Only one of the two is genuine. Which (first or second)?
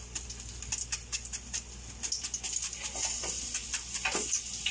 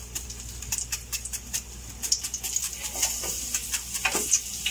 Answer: first